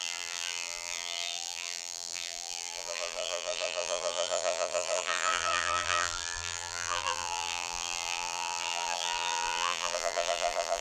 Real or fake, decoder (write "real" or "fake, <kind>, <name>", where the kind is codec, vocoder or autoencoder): fake, vocoder, BigVGAN v2